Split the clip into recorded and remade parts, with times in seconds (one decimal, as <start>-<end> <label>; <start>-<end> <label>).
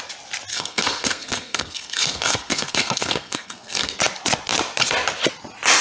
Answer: 0.0-0.5 recorded; 0.5-4.0 remade; 4.0-5.8 recorded